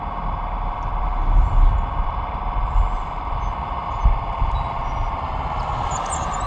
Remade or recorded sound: recorded